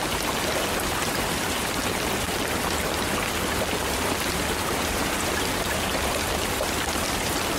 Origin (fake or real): real